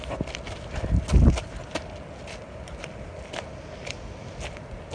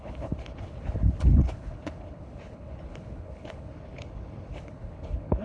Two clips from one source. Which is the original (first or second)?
first